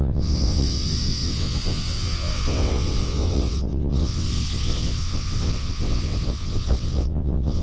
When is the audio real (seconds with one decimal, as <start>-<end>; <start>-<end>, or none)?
none